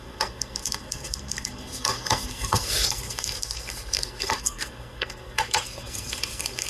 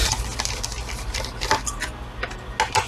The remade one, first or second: first